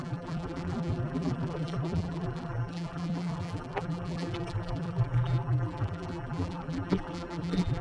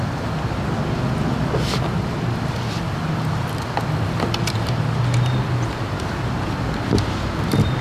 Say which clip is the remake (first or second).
first